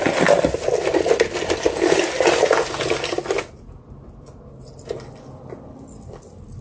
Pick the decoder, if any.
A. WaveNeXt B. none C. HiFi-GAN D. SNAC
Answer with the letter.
B